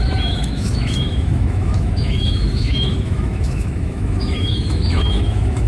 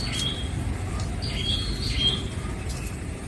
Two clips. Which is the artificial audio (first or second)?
first